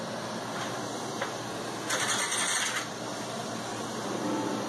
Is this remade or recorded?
recorded